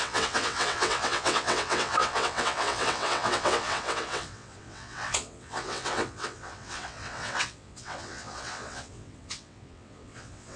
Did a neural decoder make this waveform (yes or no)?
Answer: yes